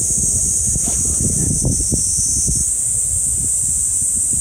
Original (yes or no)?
yes